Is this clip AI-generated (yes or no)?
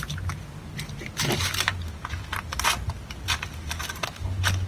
no